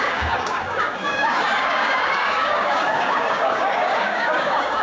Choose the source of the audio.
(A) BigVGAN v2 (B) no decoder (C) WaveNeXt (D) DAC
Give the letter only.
D